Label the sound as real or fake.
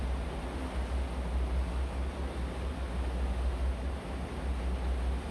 real